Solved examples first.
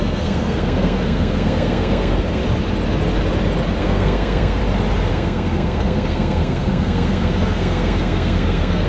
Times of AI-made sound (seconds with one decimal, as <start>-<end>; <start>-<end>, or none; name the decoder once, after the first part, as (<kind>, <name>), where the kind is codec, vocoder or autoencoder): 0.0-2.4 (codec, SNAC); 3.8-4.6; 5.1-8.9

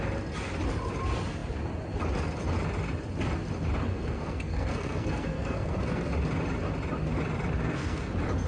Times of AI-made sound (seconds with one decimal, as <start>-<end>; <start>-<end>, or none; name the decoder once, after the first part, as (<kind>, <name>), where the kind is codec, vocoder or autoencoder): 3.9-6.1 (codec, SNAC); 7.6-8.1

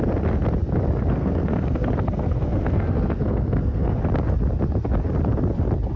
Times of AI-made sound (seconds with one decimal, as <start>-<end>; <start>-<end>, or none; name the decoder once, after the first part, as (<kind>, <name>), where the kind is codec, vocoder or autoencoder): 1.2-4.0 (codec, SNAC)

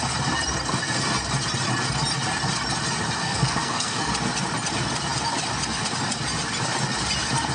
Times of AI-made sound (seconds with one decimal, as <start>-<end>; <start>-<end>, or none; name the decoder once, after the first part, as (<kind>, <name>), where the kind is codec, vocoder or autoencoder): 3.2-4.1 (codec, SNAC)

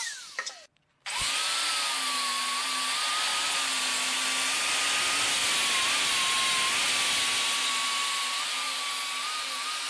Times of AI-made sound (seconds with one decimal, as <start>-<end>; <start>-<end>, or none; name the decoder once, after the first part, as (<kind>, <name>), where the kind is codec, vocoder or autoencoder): none

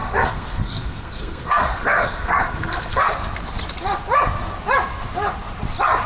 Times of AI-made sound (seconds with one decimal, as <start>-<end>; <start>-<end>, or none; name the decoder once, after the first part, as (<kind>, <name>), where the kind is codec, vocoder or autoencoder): 0.0-3.1 (codec, SNAC)